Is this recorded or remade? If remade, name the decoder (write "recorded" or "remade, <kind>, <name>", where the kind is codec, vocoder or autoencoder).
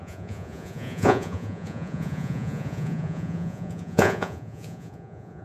remade, vocoder, Vocos